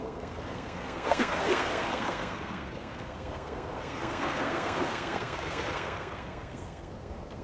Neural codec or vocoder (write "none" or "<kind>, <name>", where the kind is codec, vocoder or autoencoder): codec, SNAC